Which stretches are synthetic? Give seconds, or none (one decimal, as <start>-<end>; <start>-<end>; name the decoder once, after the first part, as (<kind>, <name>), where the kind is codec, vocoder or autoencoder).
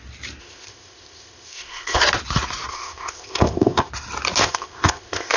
0.4-2.0 (codec, ZipCodec); 2.7-3.9; 4.4-5.4